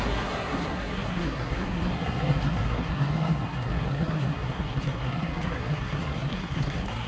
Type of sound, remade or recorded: remade